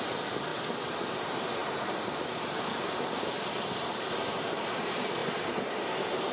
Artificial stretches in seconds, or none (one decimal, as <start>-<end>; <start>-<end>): 0.0-0.5; 1.2-6.3